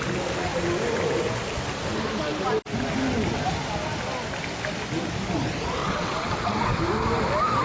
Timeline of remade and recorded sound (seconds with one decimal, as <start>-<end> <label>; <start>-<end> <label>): 0.0-5.8 recorded; 5.8-6.8 remade; 6.8-7.6 recorded